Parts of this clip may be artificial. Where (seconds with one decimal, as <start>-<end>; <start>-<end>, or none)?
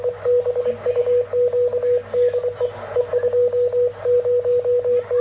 none